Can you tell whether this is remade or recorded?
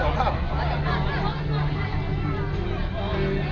recorded